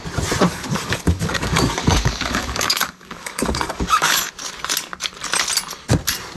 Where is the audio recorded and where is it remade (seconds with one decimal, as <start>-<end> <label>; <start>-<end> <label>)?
0.0-0.5 recorded; 0.5-4.3 remade; 4.3-6.4 recorded